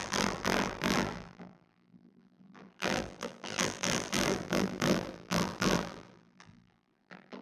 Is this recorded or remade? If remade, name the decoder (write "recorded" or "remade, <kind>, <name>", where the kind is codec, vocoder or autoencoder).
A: remade, vocoder, BigVGAN v2